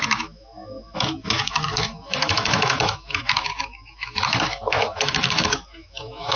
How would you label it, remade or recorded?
remade